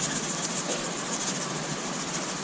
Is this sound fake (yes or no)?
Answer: no